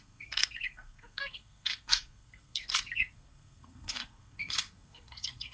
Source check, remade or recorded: remade